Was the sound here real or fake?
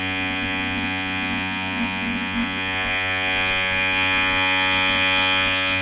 fake